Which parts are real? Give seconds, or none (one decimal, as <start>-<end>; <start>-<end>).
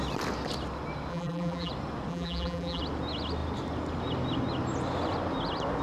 0.0-1.1; 1.7-2.1; 2.8-5.8